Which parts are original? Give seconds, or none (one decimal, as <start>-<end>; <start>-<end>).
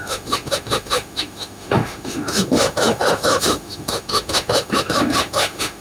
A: none